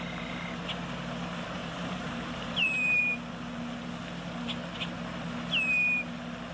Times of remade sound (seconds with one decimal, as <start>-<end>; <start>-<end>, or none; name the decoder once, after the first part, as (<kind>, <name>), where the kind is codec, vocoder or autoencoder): 1.6-3.0 (vocoder, BigVGAN v2)